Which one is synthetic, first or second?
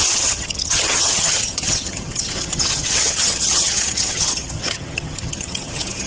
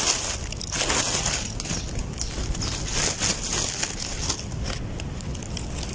first